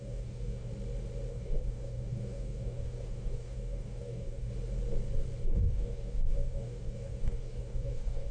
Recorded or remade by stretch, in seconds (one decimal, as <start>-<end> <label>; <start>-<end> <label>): 0.0-0.7 remade; 0.7-1.3 recorded; 1.3-4.5 remade; 4.5-5.4 recorded; 5.4-8.3 remade